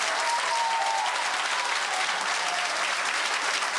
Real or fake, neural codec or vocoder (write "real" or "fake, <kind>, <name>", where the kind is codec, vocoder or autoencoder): real